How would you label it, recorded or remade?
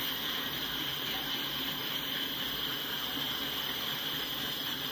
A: recorded